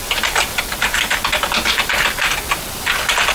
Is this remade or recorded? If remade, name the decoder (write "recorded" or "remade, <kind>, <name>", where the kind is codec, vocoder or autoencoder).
recorded